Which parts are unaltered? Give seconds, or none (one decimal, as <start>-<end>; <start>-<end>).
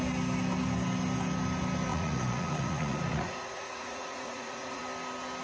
0.0-1.9; 4.8-5.4